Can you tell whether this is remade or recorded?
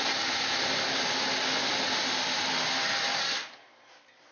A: recorded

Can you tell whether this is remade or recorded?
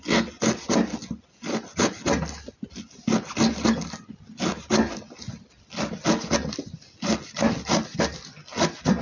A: recorded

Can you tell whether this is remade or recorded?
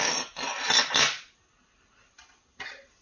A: recorded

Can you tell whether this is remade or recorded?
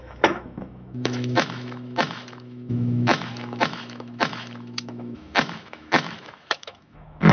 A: remade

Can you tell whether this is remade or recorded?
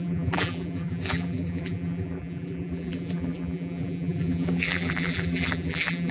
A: remade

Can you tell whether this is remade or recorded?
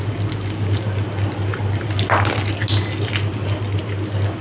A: recorded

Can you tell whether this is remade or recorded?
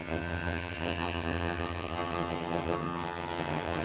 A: remade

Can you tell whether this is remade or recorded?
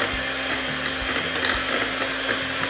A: recorded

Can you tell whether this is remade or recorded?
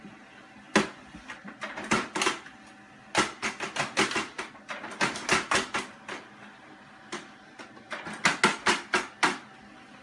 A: recorded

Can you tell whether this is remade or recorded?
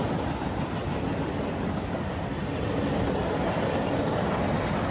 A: recorded